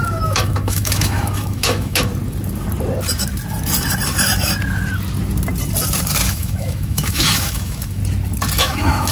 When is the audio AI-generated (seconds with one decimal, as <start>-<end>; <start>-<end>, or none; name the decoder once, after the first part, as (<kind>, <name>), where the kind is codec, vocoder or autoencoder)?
0.0-2.1 (autoencoder, DAC-VAE); 6.3-8.0; 8.6-9.1